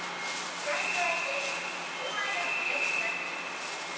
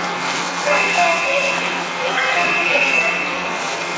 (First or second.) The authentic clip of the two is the first